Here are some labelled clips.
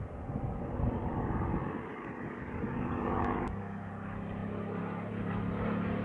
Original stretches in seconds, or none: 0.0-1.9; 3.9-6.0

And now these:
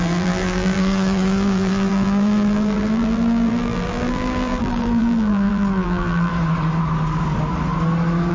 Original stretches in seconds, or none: 6.3-8.3

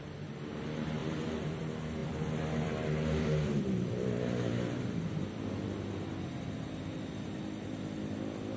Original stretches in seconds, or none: 0.0-1.0; 1.6-2.0; 5.3-8.6

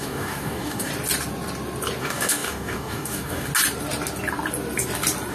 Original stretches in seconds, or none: 0.9-2.0; 3.5-5.3

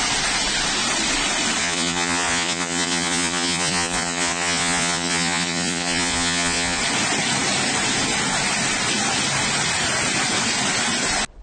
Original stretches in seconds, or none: 0.0-1.6; 6.8-11.4

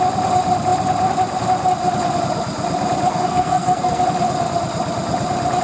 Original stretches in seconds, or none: 0.0-3.1; 4.0-5.6

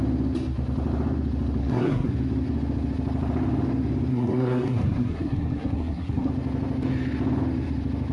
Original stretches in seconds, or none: 0.0-1.6; 2.1-4.1; 6.3-8.1

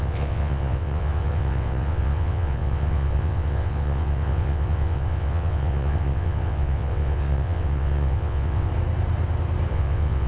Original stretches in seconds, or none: 8.7-9.7